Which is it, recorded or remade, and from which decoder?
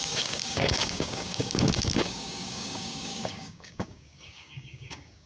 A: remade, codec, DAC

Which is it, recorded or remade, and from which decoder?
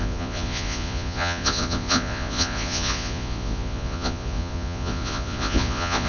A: remade, vocoder, Vocos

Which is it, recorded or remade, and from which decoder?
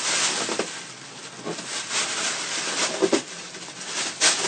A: recorded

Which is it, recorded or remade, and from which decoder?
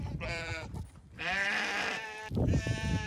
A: remade, vocoder, BigVGAN v2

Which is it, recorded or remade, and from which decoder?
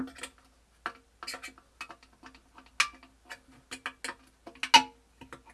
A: recorded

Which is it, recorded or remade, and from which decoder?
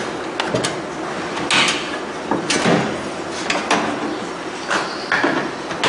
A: recorded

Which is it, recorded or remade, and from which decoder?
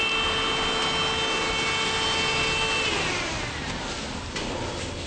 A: recorded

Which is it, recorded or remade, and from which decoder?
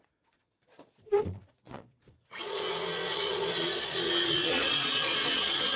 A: remade, vocoder, Vocos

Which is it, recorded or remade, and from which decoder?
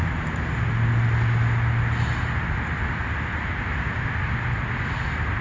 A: recorded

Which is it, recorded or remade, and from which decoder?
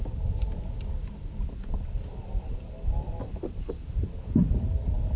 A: recorded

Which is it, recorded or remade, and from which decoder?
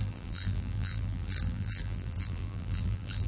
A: remade, vocoder, BigVGAN v2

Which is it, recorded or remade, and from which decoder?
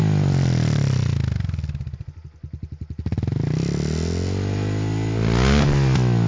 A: recorded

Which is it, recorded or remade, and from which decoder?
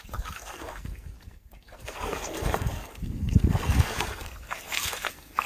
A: remade, codec, SNAC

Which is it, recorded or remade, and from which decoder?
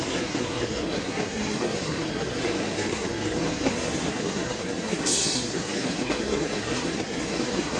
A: remade, codec, SNAC